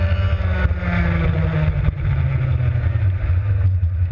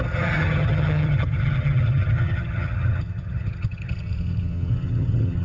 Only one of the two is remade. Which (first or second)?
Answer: second